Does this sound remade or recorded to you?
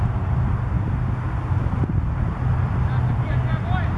recorded